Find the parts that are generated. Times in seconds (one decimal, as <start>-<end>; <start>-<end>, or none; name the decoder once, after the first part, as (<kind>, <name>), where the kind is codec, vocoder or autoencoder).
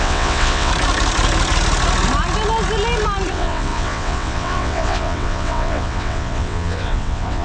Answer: 0.0-0.7 (vocoder, WaveNeXt); 3.3-7.4